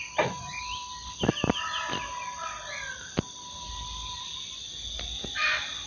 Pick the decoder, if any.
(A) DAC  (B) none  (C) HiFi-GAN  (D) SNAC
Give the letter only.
B